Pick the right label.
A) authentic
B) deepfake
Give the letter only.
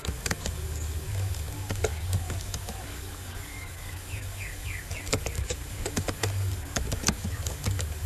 B